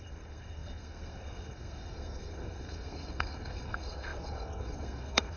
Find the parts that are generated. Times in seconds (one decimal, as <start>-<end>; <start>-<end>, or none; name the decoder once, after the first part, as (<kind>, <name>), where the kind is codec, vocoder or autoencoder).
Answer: 0.0-5.4 (codec, SNAC)